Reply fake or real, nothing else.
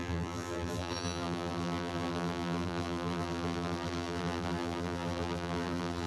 fake